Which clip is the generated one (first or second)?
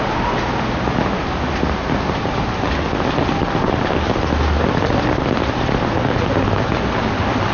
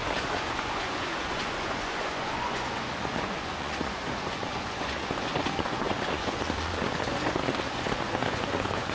second